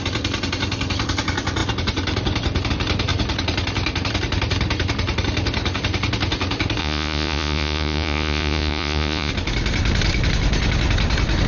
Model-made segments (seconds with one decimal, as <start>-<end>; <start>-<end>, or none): 6.8-9.3